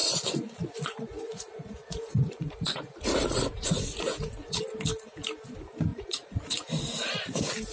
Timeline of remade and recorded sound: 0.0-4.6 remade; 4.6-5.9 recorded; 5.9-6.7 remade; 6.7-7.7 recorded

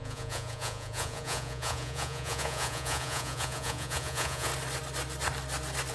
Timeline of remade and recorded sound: 0.0-4.5 remade; 4.5-5.9 recorded

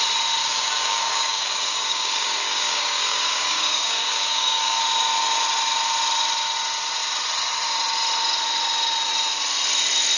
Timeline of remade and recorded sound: 0.0-0.4 recorded; 0.4-4.8 remade; 4.8-10.2 recorded